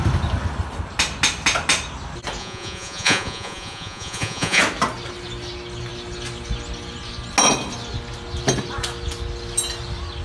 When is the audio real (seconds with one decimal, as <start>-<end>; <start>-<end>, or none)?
0.0-2.4; 4.6-10.2